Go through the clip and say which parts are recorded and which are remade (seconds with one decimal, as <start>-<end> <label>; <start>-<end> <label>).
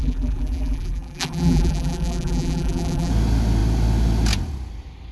0.0-3.1 remade; 3.1-5.1 recorded